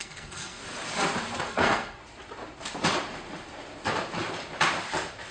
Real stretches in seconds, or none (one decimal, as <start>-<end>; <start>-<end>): 0.6-1.5; 2.0-5.3